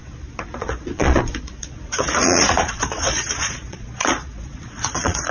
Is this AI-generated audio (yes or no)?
yes